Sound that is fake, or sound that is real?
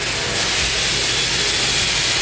real